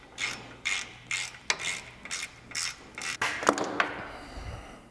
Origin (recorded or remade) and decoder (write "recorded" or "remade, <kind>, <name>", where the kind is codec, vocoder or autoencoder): recorded